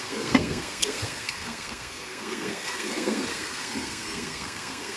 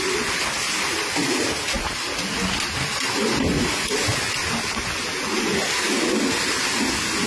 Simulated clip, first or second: first